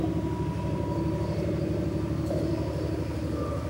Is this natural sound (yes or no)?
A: yes